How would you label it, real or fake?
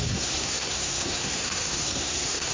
fake